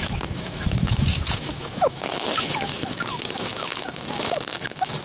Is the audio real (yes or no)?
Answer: no